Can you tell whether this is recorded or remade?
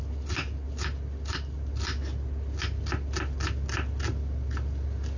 recorded